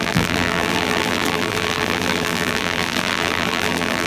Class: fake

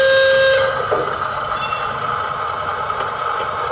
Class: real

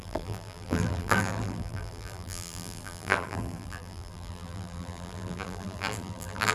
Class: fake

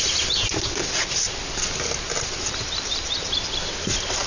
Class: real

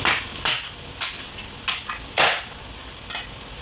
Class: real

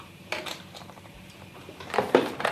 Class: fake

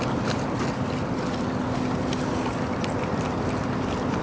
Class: real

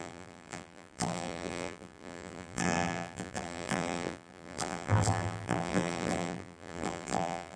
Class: fake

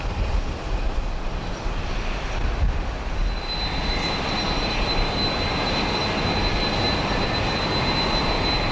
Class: real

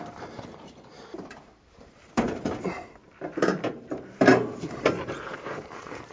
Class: fake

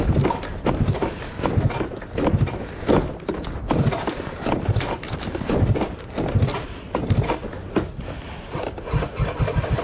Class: real